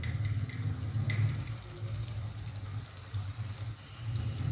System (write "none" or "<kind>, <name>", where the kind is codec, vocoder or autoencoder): none